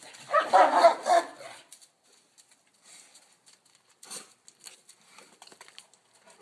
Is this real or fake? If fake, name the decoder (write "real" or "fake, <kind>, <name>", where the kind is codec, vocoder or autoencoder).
real